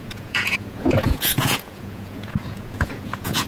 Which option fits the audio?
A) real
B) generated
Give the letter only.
B